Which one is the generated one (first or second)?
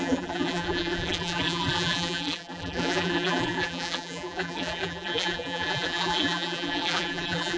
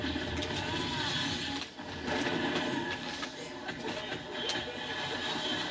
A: first